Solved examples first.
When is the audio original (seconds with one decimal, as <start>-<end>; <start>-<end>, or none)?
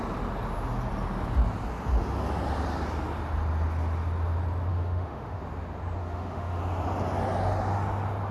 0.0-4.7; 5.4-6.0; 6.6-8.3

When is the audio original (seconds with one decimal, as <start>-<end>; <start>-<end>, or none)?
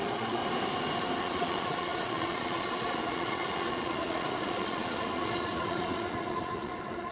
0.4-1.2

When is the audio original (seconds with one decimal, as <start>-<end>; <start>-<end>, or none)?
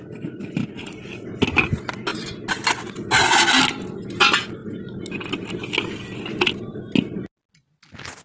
0.0-8.2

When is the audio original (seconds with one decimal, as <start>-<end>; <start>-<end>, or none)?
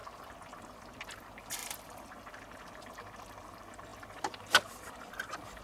0.0-5.6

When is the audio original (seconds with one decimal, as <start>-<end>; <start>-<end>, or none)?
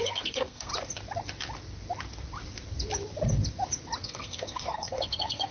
0.7-4.0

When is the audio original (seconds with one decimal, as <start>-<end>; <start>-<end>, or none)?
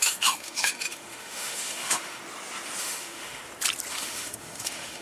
2.2-2.8; 3.4-3.9